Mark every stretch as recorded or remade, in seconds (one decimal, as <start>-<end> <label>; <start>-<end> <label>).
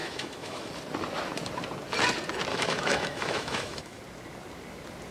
0.0-0.7 remade; 0.7-2.5 recorded; 2.5-4.0 remade; 4.0-5.1 recorded